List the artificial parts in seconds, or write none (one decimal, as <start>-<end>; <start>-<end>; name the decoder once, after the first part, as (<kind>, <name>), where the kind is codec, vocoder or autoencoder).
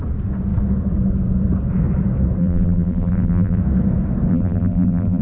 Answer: 2.4-3.6 (vocoder, BigVGAN v2); 4.3-5.2